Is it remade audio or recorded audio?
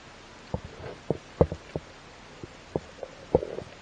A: recorded